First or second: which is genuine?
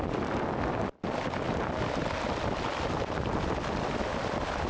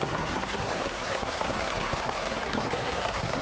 first